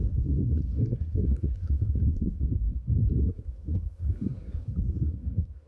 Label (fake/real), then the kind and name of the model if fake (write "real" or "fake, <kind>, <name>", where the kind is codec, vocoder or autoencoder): fake, codec, SNAC